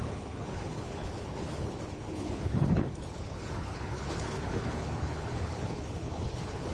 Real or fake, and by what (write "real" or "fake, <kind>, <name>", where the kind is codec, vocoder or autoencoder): fake, codec, HILCodec